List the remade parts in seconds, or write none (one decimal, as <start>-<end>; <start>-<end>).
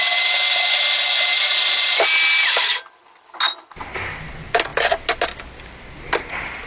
none